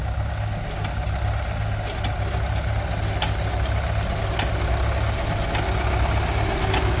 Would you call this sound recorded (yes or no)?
yes